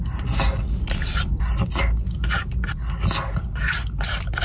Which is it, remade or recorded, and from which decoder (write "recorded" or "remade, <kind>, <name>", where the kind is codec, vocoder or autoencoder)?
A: recorded